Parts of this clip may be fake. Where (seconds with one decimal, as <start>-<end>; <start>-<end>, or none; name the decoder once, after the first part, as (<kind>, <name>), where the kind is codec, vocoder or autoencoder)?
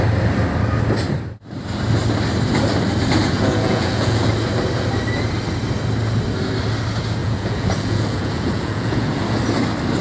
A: 3.2-4.3 (vocoder, Vocos); 7.2-9.4